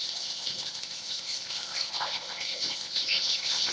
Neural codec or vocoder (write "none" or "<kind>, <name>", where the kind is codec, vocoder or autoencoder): codec, ZipCodec